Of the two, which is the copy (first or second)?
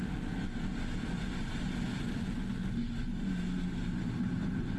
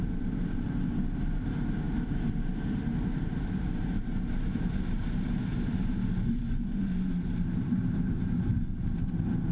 second